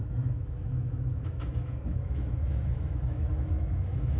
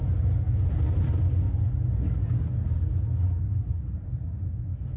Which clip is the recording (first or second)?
second